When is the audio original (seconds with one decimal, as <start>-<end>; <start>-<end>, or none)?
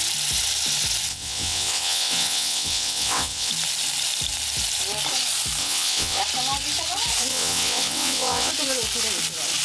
0.0-1.1; 3.5-5.6; 6.2-7.3; 8.5-9.6